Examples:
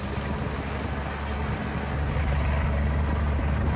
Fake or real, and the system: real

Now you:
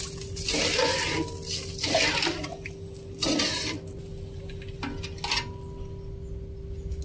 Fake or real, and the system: real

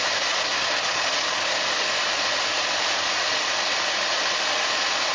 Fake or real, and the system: real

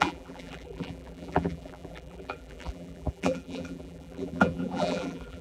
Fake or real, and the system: fake, vocoder, BigVGAN v2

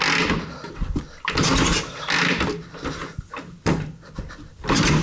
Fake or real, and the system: real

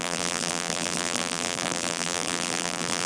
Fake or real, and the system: fake, vocoder, BigVGAN v2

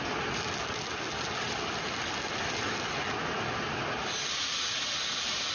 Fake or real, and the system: real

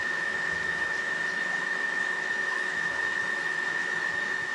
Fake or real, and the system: fake, autoencoder, DAC-VAE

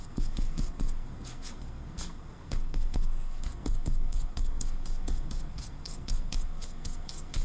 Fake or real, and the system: fake, codec, SNAC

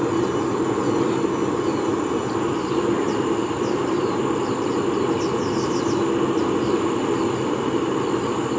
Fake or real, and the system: real